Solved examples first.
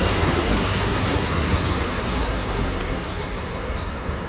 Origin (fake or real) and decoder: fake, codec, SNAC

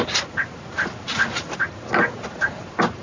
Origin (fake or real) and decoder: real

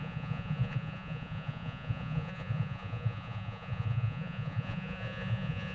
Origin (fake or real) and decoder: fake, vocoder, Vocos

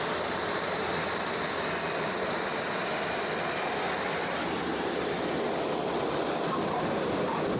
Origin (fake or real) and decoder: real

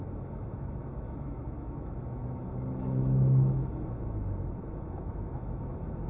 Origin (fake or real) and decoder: fake, autoencoder, DAC-VAE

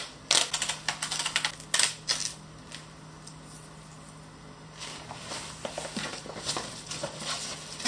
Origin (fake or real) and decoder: real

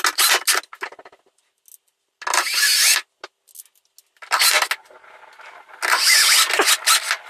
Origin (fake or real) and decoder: real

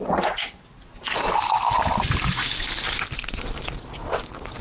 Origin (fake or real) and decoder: real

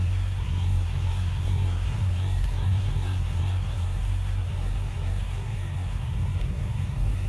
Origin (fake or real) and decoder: fake, codec, SNAC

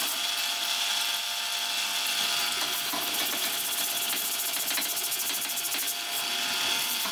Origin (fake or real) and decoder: real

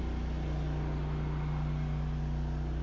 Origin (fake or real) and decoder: real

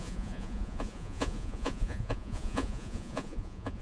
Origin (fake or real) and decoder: fake, vocoder, Vocos